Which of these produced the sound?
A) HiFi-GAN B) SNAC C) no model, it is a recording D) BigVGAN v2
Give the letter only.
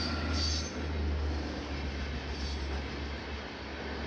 C